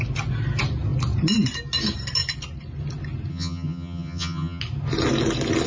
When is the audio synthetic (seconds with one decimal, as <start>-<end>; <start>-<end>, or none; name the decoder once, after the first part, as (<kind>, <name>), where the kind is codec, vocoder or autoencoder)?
3.3-4.6 (vocoder, HiFi-GAN)